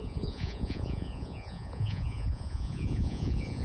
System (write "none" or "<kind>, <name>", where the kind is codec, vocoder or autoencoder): vocoder, Vocos